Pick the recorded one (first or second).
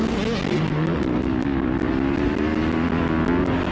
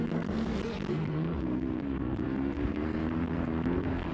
first